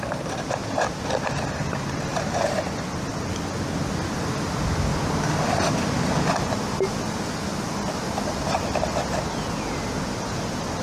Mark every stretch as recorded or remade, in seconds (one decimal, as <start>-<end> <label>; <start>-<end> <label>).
0.0-10.8 recorded